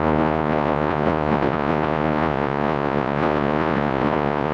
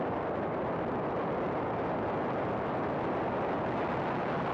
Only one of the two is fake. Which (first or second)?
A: first